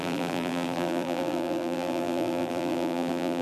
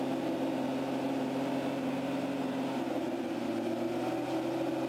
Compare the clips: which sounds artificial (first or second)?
first